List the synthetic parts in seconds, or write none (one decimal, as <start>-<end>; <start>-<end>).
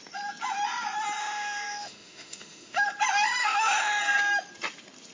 1.2-2.8; 3.4-4.0